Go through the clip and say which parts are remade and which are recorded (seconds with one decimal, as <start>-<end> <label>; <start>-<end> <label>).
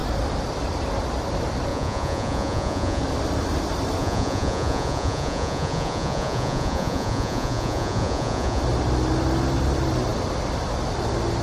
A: 0.0-1.7 recorded; 1.7-3.0 remade; 3.0-4.0 recorded; 4.0-8.6 remade; 8.6-11.4 recorded